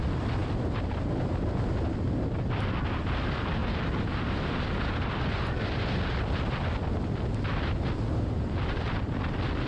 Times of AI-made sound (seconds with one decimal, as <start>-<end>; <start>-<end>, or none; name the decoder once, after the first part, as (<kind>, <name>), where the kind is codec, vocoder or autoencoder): 3.6-5.2 (vocoder, BigVGAN v2)